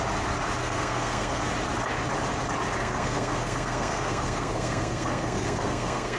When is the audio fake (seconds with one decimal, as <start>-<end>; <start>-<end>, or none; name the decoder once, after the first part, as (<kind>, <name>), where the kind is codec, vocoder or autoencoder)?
0.6-1.4 (codec, SNAC); 2.8-6.2